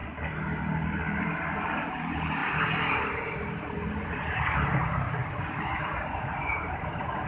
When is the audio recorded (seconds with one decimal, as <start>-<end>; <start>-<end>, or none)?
0.0-1.2; 2.4-4.2; 5.2-6.4